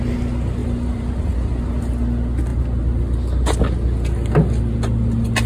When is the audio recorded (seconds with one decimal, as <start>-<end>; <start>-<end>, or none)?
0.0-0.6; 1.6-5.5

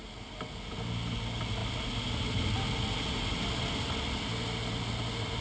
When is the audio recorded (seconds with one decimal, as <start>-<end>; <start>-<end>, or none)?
0.0-5.4

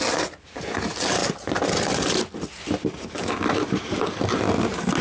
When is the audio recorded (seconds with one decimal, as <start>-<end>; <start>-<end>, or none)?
0.0-5.0